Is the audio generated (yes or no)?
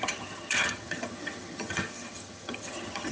yes